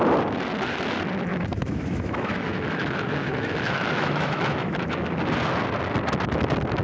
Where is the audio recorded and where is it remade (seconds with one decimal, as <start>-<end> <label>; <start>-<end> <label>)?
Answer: 0.0-1.3 recorded; 1.3-5.2 remade; 5.2-6.8 recorded

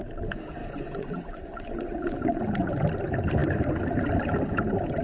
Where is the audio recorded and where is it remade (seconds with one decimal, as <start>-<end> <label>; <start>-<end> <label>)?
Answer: 0.0-0.6 recorded; 0.6-2.4 remade; 2.4-5.0 recorded

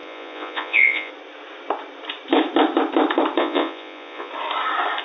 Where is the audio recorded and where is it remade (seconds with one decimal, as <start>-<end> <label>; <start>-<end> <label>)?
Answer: 0.0-1.1 remade; 1.1-3.4 recorded; 3.4-4.3 remade; 4.3-5.0 recorded

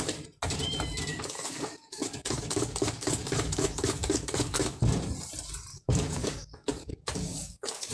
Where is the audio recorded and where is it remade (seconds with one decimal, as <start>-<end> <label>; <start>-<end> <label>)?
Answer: 0.0-1.1 recorded; 1.1-4.8 remade; 4.8-5.7 recorded; 5.7-7.9 remade

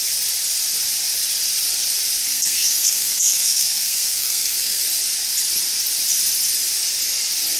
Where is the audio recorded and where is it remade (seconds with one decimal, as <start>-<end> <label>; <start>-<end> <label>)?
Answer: 0.0-2.3 recorded; 2.3-4.8 remade; 4.8-7.6 recorded